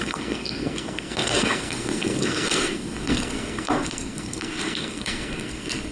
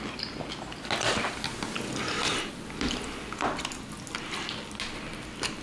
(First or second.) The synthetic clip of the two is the first